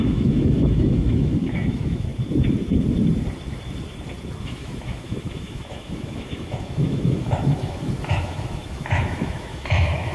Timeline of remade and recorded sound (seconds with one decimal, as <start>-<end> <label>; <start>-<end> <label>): 0.0-2.1 remade; 2.1-4.4 recorded; 4.4-10.1 remade